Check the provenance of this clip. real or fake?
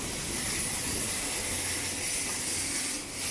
real